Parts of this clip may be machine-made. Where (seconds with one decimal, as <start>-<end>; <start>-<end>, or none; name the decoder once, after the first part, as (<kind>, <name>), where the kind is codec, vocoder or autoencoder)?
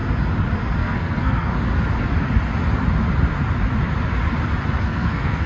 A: 0.8-1.5 (codec, SNAC); 4.8-5.5